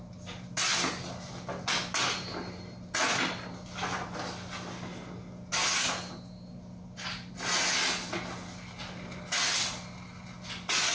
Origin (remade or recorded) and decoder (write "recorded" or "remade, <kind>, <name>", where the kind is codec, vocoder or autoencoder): recorded